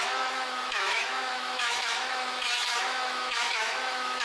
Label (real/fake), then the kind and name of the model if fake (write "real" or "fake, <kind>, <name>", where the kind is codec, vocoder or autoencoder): fake, autoencoder, DAC-VAE